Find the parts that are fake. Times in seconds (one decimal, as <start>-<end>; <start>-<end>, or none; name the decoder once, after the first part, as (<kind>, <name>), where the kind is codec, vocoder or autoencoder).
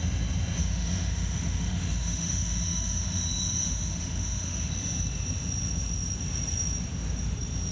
0.6-4.7 (autoencoder, DAC-VAE)